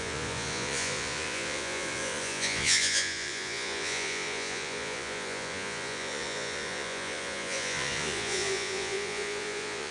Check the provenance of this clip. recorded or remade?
remade